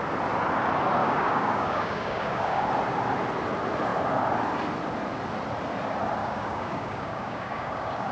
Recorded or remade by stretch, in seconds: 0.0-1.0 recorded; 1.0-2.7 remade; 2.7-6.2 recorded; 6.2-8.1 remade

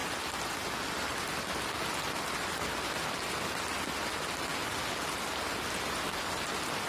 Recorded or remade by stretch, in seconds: 0.0-6.9 recorded

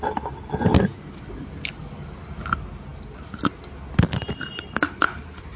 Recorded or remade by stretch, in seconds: 0.0-5.6 recorded

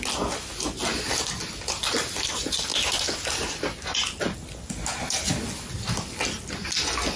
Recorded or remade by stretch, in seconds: 0.0-7.2 recorded

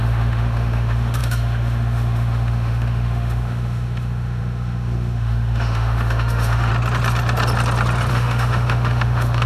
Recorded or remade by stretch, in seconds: 0.0-6.7 remade; 6.7-8.1 recorded; 8.1-9.5 remade

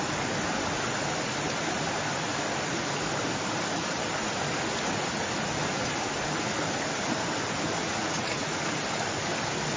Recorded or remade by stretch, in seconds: 0.0-7.8 recorded; 7.8-8.7 remade; 8.7-9.8 recorded